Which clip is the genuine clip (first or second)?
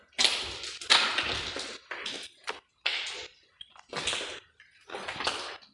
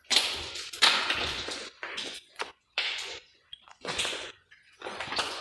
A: first